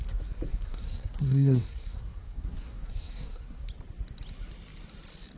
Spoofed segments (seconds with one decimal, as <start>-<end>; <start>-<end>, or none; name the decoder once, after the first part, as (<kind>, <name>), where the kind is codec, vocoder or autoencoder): 0.5-3.7 (codec, SNAC)